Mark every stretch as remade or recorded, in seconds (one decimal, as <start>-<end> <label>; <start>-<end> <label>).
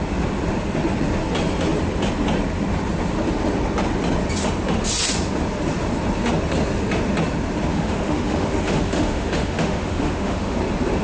0.0-7.7 recorded; 7.7-10.6 remade; 10.6-11.0 recorded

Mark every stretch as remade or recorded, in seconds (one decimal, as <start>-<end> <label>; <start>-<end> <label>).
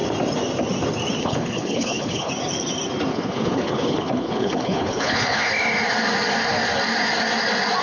0.0-1.2 recorded; 1.2-2.3 remade; 2.3-3.1 recorded; 3.1-5.5 remade; 5.5-7.8 recorded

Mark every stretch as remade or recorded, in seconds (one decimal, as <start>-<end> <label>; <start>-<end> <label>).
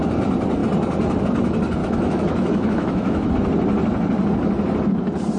0.0-1.8 recorded; 1.8-3.3 remade; 3.3-5.4 recorded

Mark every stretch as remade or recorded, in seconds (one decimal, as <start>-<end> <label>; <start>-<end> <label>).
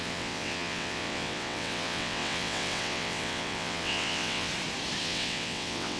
0.0-4.5 remade; 4.5-5.0 recorded; 5.0-6.0 remade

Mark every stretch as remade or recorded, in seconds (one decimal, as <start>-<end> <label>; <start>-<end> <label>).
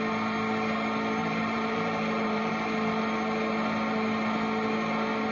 0.0-1.2 recorded; 1.2-2.5 remade; 2.5-5.3 recorded